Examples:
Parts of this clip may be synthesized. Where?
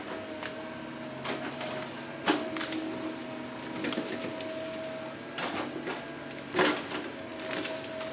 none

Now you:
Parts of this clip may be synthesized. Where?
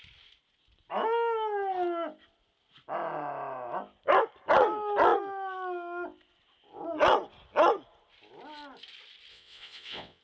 9.3-10.2 (vocoder, WaveNeXt)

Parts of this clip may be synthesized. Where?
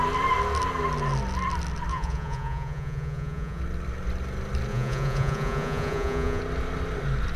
1.9-3.6 (vocoder, Vocos); 4.7-6.4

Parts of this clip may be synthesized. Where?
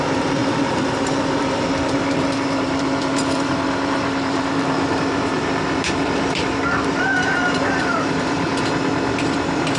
0.0-8.5 (vocoder, BigVGAN v2)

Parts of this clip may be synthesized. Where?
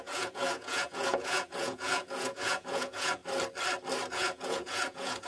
0.0-3.2 (vocoder, Vocos); 4.1-5.3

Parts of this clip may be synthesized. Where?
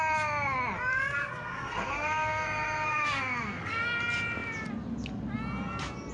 1.2-4.0 (codec, SNAC)